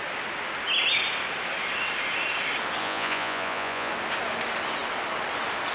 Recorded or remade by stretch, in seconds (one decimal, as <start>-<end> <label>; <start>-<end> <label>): 0.0-2.8 recorded; 2.8-3.9 remade; 3.9-5.7 recorded